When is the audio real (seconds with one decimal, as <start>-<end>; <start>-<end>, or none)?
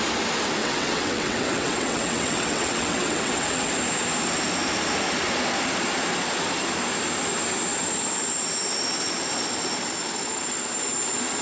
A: 0.0-0.6; 3.7-11.4